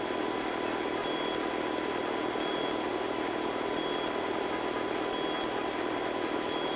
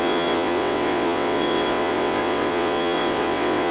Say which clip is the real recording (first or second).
first